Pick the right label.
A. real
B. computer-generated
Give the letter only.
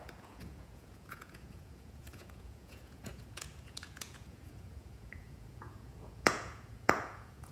B